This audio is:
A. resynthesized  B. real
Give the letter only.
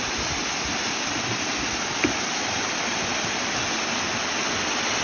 B